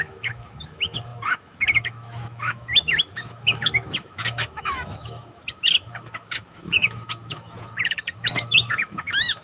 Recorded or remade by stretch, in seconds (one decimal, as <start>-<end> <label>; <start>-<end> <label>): 0.0-9.4 remade